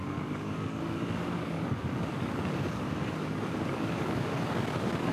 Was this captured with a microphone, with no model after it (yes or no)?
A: no